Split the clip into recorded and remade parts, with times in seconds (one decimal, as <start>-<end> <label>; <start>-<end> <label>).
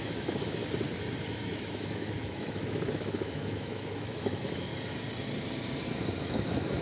0.0-0.6 remade; 0.6-1.3 recorded; 1.3-4.7 remade; 4.7-6.2 recorded; 6.2-6.8 remade